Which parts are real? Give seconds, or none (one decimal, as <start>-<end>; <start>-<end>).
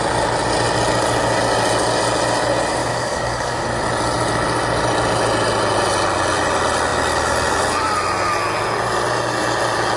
0.0-2.8; 3.6-10.0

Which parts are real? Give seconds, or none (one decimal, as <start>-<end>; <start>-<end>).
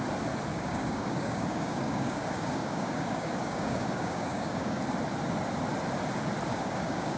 0.0-0.5; 4.8-6.5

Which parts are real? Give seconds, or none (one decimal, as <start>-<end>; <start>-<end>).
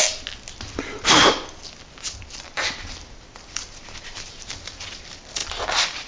0.0-6.1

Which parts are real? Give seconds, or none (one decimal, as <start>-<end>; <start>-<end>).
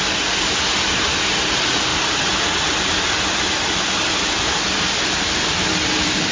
0.0-6.3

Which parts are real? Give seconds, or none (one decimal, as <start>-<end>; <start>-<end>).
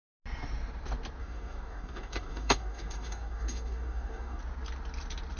0.0-1.2; 4.4-5.4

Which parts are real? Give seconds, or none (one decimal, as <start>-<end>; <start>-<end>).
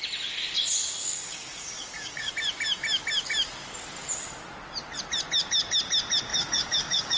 0.0-1.0; 2.3-6.3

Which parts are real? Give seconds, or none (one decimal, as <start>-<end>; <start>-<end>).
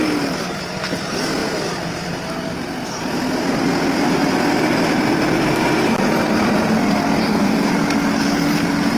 0.0-7.2; 7.7-9.0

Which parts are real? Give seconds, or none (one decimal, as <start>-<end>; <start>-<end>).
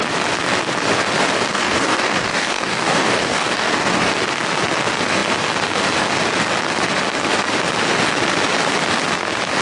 0.0-1.5; 4.1-9.6